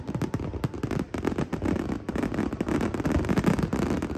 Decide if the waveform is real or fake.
real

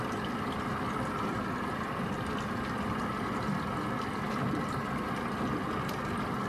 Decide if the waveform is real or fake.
real